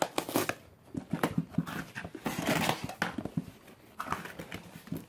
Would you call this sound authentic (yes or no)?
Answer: yes